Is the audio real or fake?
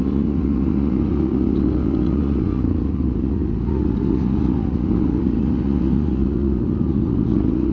fake